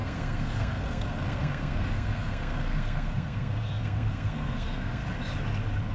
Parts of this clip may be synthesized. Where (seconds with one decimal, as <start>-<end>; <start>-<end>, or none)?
0.0-5.0